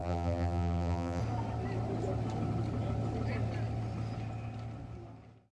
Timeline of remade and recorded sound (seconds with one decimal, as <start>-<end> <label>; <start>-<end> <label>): 0.0-1.2 remade; 1.2-5.6 recorded

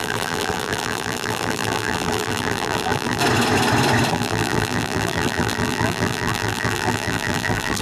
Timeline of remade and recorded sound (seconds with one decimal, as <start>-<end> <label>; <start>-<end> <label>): 0.0-3.2 remade; 3.2-4.1 recorded; 4.1-7.8 remade

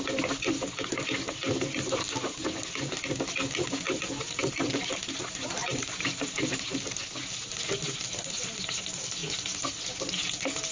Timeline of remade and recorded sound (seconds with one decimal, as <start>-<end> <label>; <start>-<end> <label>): 0.0-4.4 recorded; 4.4-6.8 remade; 6.8-10.7 recorded

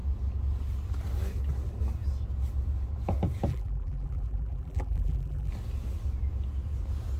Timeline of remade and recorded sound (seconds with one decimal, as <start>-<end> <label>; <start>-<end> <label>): 0.0-3.5 recorded; 3.5-5.5 remade; 5.5-7.2 recorded

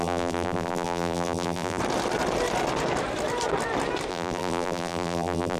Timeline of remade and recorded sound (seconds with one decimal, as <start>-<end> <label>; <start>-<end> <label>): 0.0-1.8 remade; 1.8-4.1 recorded; 4.1-5.6 remade

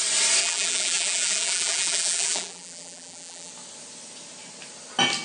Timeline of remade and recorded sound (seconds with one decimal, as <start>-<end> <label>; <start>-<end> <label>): 0.0-0.4 recorded; 0.4-3.5 remade; 3.5-5.2 recorded

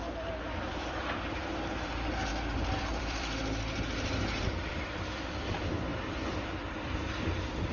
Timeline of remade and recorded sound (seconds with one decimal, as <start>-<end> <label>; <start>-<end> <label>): 0.0-0.7 recorded; 0.7-7.7 remade